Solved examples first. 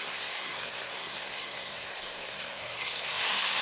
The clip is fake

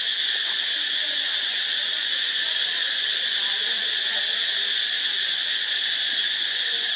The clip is fake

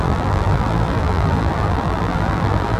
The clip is fake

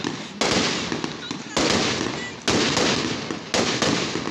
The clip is real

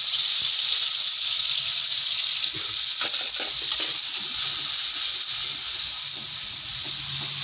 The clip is real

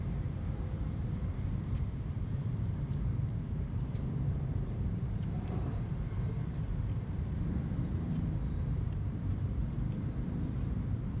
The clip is fake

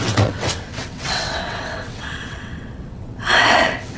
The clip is fake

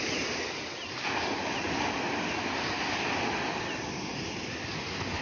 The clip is real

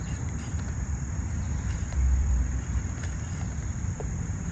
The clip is fake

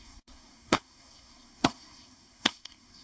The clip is fake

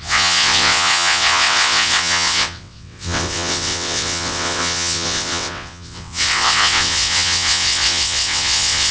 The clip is fake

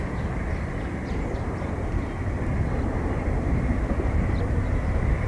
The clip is real